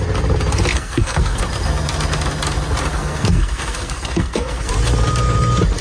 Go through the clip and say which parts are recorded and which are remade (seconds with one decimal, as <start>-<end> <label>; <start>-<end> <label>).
0.0-0.7 recorded; 0.7-1.4 remade; 1.4-2.9 recorded; 2.9-4.7 remade; 4.7-5.8 recorded